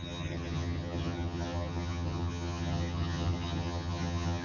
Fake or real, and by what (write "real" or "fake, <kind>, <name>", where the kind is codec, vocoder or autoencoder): fake, vocoder, HiFi-GAN